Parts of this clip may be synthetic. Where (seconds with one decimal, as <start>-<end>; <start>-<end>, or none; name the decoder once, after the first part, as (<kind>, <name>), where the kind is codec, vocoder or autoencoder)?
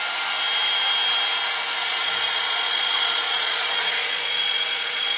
1.8-5.2 (vocoder, Vocos)